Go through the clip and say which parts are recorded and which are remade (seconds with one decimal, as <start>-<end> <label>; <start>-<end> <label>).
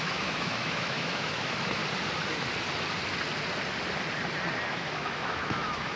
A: 0.0-1.8 remade; 1.8-4.7 recorded; 4.7-6.0 remade